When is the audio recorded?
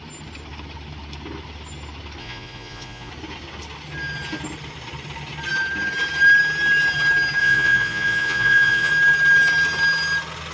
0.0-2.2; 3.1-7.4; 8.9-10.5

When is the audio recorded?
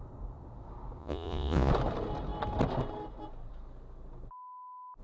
0.0-1.0; 1.7-5.0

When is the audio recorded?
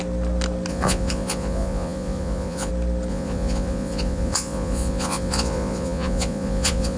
0.0-0.7; 2.7-3.1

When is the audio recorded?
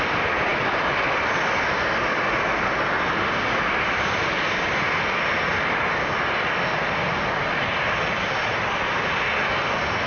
0.0-10.1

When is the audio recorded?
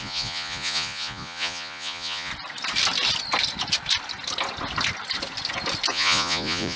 2.3-5.9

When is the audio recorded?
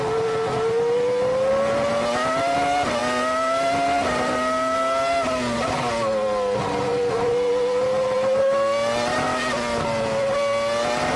0.0-11.2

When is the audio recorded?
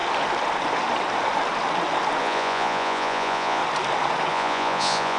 0.0-2.2; 3.6-4.3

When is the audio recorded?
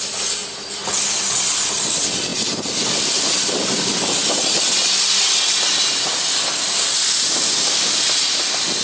0.0-8.8